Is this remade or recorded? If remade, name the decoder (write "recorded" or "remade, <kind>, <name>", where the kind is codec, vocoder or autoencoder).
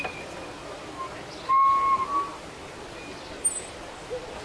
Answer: recorded